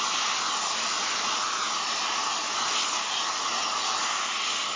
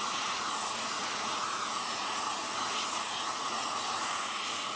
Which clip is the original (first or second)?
first